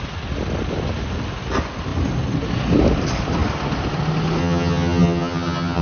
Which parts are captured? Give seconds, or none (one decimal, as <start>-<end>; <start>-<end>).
0.0-4.4